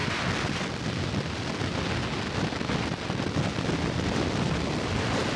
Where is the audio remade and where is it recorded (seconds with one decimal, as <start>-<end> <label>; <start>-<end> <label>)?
0.0-5.4 recorded

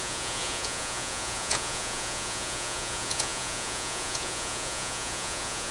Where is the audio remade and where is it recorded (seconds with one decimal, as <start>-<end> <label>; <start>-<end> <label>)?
0.0-5.7 remade